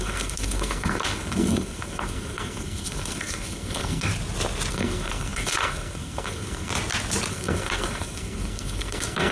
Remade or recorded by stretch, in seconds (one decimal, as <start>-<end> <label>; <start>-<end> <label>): 0.0-4.1 remade; 4.1-4.7 recorded; 4.7-6.7 remade; 6.7-7.3 recorded; 7.3-9.3 remade